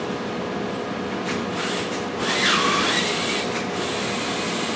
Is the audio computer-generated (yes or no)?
no